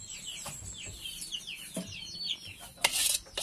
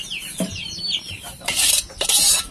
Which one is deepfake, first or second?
second